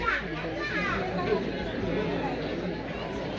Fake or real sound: real